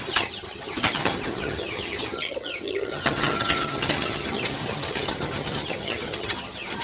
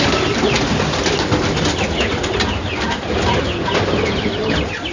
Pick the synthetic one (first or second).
first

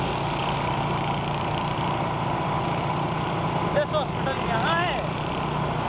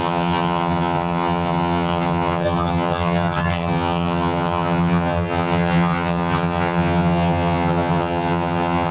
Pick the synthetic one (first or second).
second